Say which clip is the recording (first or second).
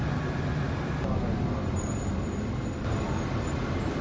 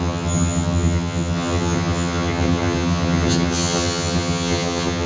first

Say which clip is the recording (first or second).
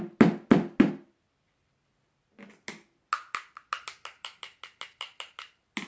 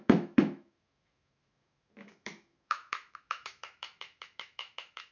first